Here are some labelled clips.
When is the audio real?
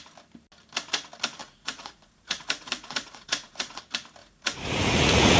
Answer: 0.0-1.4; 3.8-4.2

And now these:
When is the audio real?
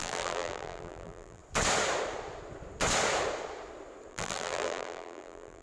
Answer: 1.4-4.1